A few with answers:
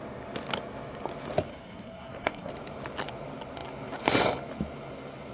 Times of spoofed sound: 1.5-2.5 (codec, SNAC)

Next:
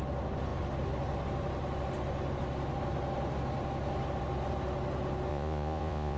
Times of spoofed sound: 5.3-6.2 (vocoder, Vocos)